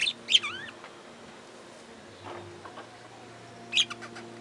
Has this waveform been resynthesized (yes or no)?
no